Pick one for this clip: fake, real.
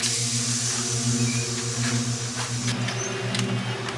real